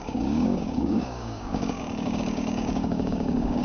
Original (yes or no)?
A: no